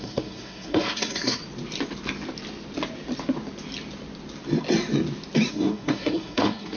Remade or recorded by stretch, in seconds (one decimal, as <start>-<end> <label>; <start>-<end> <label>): 0.0-1.4 remade; 1.4-5.5 recorded; 5.5-6.8 remade